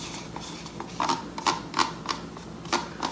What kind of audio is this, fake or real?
real